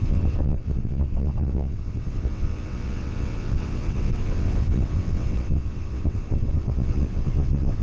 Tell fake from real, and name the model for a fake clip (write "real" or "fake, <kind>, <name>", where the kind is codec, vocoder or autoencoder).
fake, vocoder, WaveNeXt